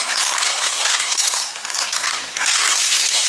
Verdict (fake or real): fake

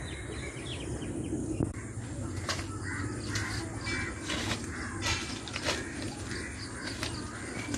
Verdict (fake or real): real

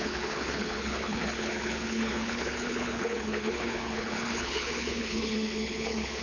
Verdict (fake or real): fake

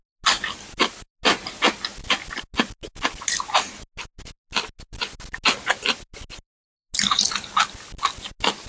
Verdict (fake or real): real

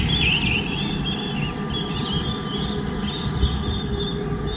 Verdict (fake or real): real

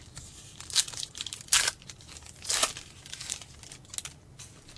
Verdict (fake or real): real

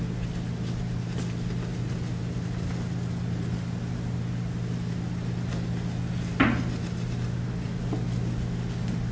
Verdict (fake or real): real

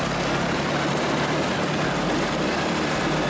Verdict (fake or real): real